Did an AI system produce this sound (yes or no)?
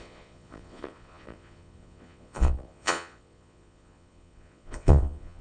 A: yes